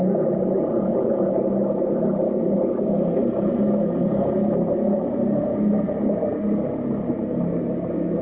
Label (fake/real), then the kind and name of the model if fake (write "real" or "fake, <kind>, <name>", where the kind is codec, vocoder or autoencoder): real